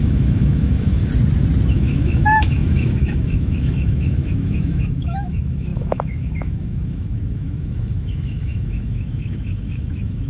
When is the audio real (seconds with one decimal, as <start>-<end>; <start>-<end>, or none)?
1.0-1.7